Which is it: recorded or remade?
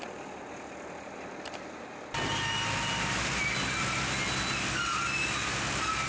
recorded